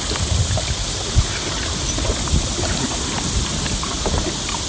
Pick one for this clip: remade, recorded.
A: recorded